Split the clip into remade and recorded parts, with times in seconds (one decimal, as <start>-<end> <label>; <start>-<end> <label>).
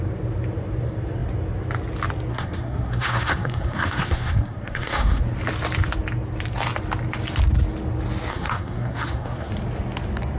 0.0-2.3 recorded; 2.3-5.2 remade; 5.2-8.3 recorded; 8.3-9.5 remade; 9.5-10.4 recorded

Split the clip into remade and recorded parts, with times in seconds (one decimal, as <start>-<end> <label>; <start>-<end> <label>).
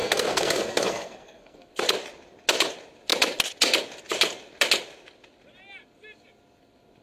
0.0-1.7 remade; 1.7-7.0 recorded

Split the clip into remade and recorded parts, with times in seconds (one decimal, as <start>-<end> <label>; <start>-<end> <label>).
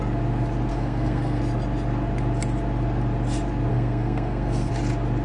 0.0-0.7 recorded; 0.7-1.4 remade; 1.4-3.7 recorded; 3.7-4.7 remade; 4.7-5.2 recorded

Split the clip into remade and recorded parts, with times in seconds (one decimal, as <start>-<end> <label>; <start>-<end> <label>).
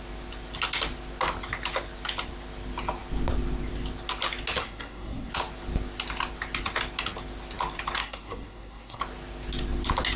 0.0-4.6 recorded; 4.6-5.3 remade; 5.3-8.0 recorded; 8.0-9.0 remade; 9.0-10.2 recorded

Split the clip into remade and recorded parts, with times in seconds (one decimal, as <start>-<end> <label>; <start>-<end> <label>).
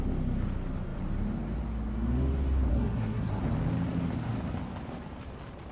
0.0-2.7 recorded; 2.7-3.4 remade; 3.4-5.7 recorded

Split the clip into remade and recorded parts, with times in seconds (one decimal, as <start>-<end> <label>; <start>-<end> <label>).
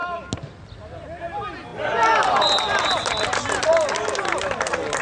0.0-5.0 recorded